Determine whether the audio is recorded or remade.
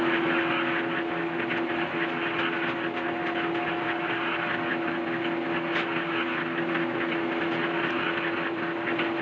recorded